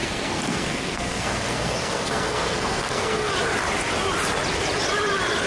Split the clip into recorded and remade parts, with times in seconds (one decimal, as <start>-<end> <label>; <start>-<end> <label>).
0.0-3.3 remade; 3.3-5.5 recorded